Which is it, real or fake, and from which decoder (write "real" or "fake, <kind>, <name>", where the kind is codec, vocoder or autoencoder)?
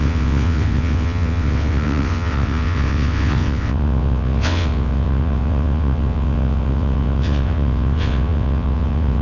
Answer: fake, vocoder, WaveNeXt